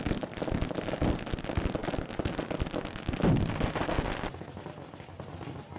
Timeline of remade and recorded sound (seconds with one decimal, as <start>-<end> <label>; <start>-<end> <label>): 0.0-5.8 recorded

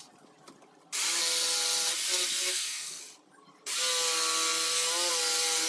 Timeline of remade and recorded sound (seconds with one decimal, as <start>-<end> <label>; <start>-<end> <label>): 0.0-2.3 recorded; 2.3-3.0 remade; 3.0-5.7 recorded

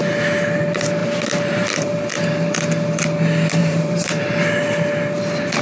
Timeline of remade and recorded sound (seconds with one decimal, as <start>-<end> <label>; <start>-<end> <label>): 0.0-1.0 recorded; 1.0-1.9 remade; 1.9-3.6 recorded; 3.6-4.3 remade; 4.3-5.6 recorded

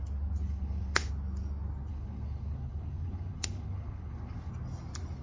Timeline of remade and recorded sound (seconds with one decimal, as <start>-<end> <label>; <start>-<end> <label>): 0.0-0.4 recorded; 0.4-1.1 remade; 1.1-1.9 recorded; 1.9-4.5 remade; 4.5-5.2 recorded

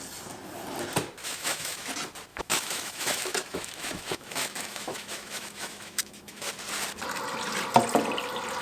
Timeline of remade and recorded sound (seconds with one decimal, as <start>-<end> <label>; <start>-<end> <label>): 0.0-1.2 recorded; 1.2-1.9 remade; 1.9-2.3 recorded; 2.3-6.5 remade; 6.5-8.6 recorded

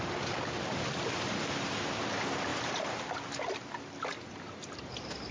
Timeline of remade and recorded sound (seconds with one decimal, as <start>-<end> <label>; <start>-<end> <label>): 0.0-5.3 recorded